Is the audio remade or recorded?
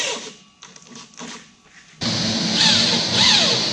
recorded